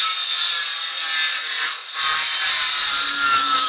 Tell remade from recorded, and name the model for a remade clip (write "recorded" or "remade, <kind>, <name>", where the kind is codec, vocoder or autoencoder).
recorded